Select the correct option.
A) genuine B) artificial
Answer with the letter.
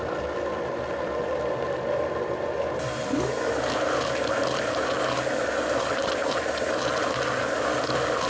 A